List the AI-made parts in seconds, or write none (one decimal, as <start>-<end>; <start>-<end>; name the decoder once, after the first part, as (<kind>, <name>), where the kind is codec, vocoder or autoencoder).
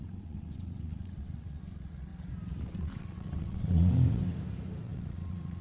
0.0-2.1 (vocoder, WaveNeXt); 2.6-4.2; 4.8-5.6